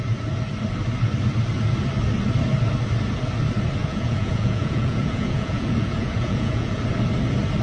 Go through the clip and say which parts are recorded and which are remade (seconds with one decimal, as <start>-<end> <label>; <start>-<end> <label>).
0.0-3.8 recorded; 3.8-6.8 remade; 6.8-7.6 recorded